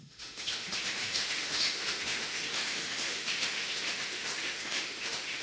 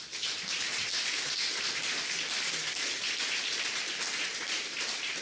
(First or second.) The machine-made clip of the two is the first